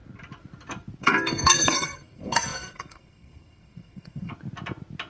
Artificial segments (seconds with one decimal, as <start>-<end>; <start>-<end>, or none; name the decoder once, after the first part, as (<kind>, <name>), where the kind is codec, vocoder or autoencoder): 1.0-4.3 (codec, SNAC)